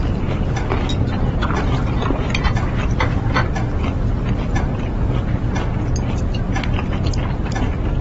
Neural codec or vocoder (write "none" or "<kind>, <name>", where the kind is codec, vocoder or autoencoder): none